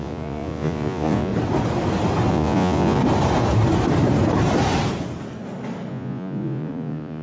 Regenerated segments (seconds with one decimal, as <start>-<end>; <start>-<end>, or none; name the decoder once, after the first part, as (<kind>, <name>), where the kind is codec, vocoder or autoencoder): 0.0-1.3 (vocoder, Vocos); 2.3-3.0; 5.9-7.2

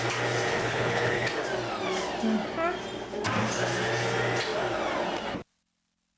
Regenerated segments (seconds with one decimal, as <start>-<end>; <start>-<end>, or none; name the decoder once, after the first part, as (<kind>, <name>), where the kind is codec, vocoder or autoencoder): 0.5-1.3 (codec, HILCodec)

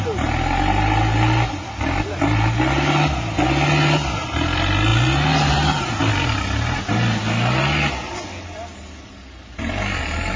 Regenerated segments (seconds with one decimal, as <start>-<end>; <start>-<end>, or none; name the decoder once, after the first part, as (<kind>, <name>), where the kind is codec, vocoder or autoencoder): none

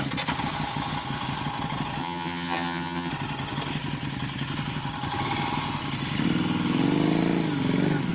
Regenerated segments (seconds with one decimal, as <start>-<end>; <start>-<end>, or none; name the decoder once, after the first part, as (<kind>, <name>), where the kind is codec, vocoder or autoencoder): 2.0-3.1 (vocoder, HiFi-GAN)